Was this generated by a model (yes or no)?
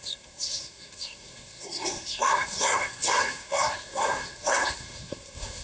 yes